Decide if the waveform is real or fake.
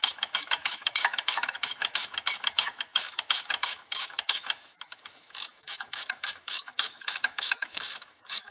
fake